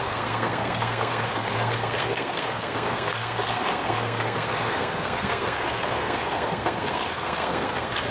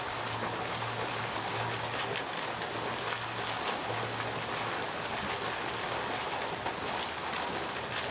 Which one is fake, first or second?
first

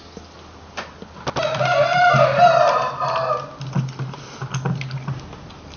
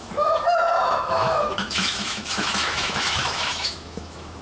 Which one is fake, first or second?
second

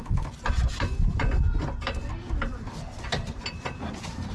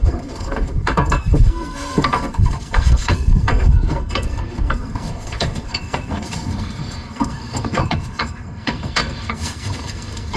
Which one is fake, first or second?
second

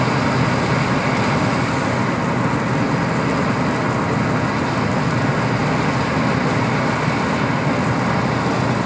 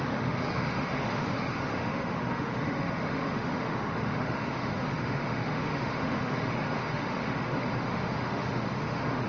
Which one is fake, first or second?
second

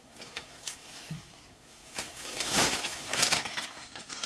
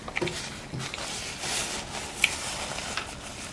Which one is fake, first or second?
first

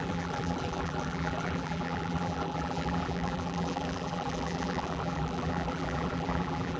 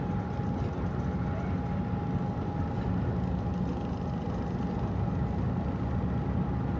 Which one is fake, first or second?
first